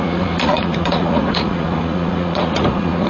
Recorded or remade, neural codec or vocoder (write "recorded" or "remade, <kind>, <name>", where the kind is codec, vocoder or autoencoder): remade, vocoder, Vocos